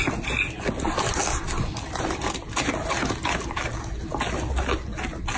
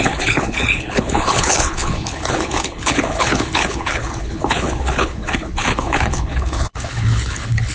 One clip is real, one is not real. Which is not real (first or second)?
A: second